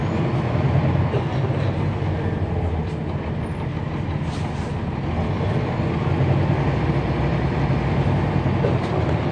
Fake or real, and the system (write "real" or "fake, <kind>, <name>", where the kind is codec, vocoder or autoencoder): real